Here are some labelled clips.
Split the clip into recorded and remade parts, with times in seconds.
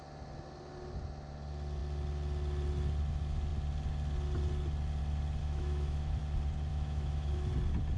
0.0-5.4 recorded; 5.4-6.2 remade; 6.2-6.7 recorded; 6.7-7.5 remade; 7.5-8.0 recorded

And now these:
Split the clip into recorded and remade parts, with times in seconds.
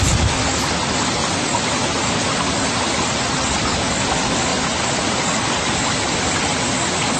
0.0-7.2 recorded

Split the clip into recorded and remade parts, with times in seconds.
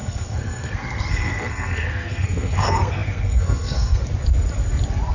0.0-4.0 remade; 4.0-5.1 recorded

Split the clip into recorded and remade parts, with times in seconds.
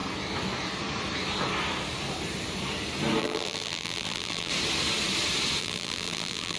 0.0-3.2 recorded; 3.2-4.5 remade; 4.5-5.6 recorded; 5.6-6.6 remade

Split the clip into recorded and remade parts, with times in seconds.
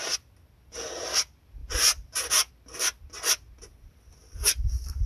0.0-1.6 recorded; 1.6-2.5 remade; 2.5-4.2 recorded; 4.2-5.1 remade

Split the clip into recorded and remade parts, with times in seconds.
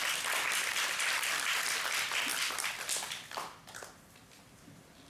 0.0-0.6 recorded; 0.6-2.3 remade; 2.3-4.4 recorded; 4.4-5.1 remade